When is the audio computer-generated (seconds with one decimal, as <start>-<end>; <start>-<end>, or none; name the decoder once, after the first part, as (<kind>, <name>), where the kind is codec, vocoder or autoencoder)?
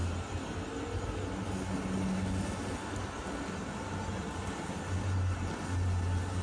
none